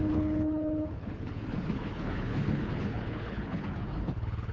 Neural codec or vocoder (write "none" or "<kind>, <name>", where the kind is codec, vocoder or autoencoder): codec, HILCodec